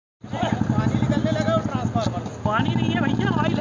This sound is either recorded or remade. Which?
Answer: recorded